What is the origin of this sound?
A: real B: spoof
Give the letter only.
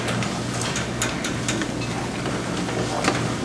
A